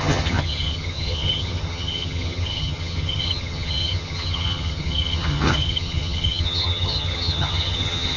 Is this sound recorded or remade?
remade